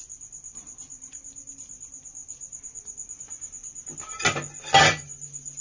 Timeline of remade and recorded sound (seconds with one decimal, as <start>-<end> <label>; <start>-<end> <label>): 0.0-5.6 recorded